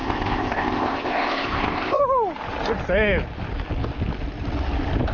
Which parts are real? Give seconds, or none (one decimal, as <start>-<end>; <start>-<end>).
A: 2.0-5.1